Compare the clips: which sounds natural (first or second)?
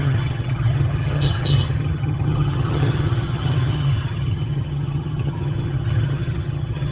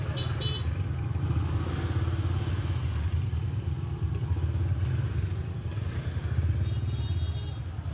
second